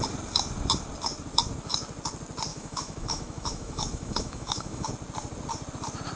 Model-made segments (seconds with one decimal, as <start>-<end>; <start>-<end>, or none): 2.5-4.9